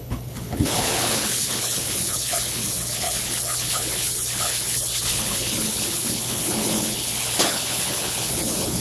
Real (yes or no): no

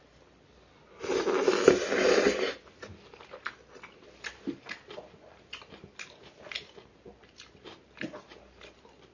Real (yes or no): yes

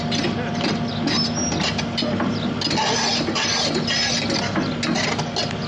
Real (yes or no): yes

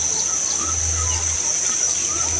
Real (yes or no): yes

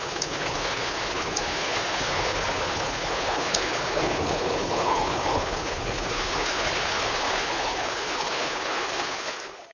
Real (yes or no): no